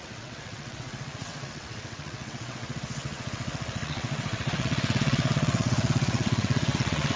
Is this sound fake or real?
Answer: fake